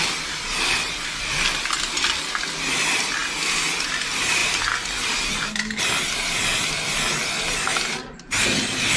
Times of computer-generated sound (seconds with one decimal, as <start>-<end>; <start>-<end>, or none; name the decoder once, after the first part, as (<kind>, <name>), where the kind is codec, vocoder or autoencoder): none